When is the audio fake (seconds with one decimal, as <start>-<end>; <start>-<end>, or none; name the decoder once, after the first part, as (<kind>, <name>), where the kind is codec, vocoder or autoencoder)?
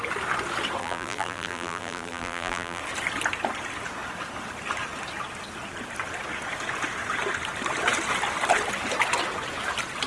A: 0.8-2.8 (vocoder, BigVGAN v2)